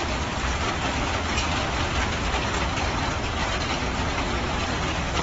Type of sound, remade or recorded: recorded